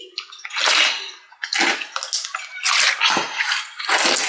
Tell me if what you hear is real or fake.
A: real